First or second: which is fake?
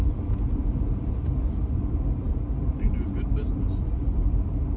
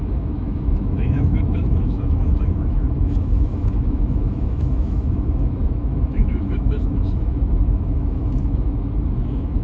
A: second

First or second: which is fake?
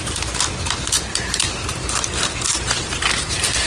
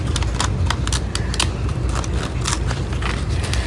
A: first